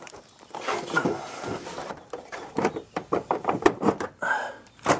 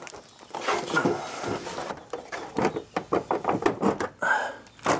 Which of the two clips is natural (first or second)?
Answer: second